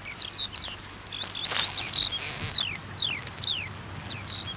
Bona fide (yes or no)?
yes